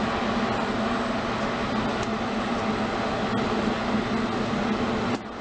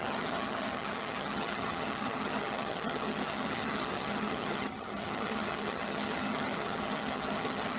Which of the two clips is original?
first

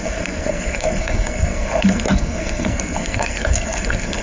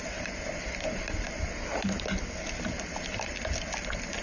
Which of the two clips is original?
second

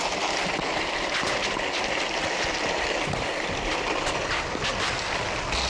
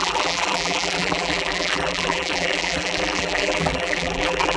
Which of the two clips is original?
first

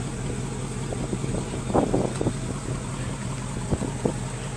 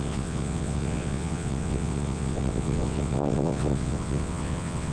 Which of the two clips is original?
first